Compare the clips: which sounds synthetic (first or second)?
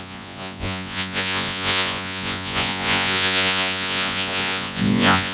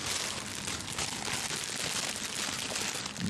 first